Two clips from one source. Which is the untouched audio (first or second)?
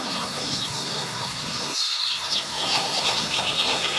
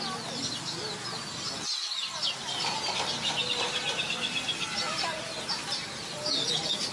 second